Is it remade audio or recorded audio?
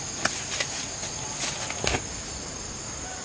recorded